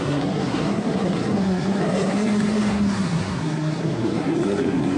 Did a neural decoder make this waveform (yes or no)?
yes